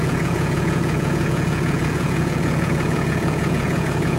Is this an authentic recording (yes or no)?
no